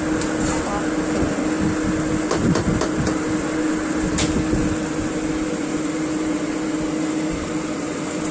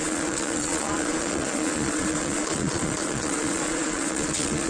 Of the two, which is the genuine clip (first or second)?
first